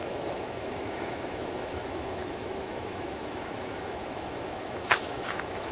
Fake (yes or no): yes